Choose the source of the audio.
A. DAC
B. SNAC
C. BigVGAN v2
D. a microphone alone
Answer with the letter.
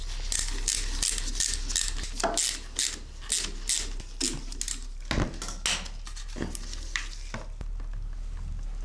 D